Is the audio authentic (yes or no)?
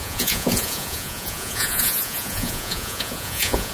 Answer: no